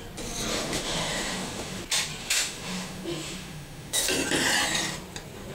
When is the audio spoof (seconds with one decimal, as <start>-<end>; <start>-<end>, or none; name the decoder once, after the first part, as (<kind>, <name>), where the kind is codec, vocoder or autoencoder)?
0.5-1.8 (autoencoder, DAC-VAE); 2.2-4.1